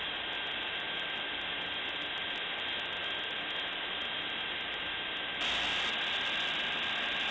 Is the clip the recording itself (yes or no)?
yes